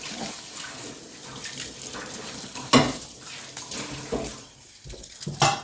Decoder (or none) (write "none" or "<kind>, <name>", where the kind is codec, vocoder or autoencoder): none